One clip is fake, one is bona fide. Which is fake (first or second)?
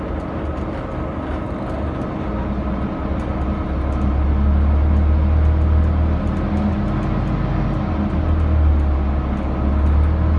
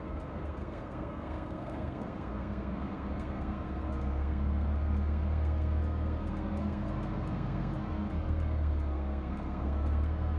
second